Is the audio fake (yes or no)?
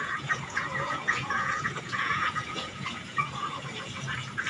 yes